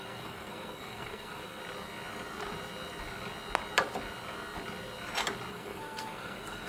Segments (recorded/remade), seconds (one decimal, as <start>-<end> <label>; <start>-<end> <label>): 0.0-1.6 remade; 1.6-5.5 recorded; 5.5-6.7 remade